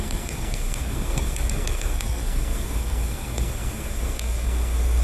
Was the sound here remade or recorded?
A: remade